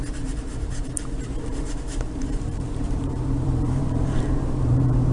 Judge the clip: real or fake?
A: fake